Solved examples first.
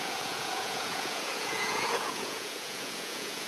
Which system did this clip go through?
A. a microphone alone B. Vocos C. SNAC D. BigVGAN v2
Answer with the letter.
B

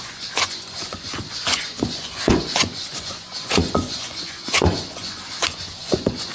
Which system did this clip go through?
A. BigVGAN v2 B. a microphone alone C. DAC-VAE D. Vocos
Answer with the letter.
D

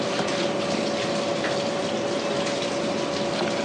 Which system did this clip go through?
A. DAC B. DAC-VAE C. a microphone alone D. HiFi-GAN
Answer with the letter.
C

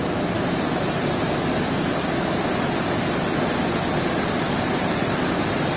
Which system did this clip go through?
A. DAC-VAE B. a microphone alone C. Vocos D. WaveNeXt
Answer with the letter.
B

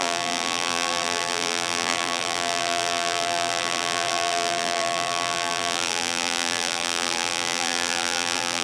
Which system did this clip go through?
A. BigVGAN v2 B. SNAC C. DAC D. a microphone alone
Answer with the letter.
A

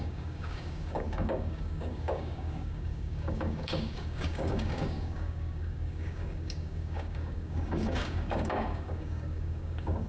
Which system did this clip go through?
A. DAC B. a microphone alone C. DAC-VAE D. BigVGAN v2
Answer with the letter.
A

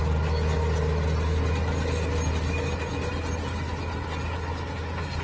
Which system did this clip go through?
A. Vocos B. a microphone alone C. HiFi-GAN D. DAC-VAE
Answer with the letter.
B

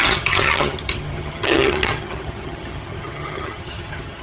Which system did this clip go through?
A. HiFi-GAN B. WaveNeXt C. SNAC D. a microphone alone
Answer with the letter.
A